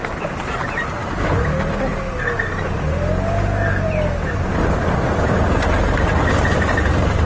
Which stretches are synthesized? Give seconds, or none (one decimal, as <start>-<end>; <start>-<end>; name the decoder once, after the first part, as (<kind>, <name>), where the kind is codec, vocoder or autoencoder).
none